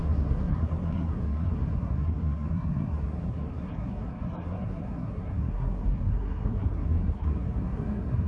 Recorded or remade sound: remade